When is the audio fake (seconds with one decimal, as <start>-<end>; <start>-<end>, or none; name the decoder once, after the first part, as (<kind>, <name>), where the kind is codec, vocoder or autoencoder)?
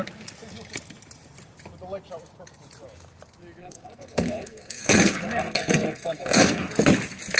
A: 3.6-6.7 (codec, SNAC)